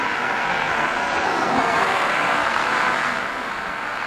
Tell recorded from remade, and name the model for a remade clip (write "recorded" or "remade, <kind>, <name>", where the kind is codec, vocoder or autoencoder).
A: remade, codec, SNAC